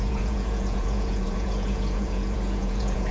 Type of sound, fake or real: fake